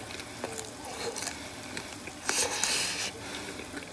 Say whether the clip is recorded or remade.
recorded